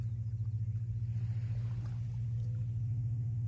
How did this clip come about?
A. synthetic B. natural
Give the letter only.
B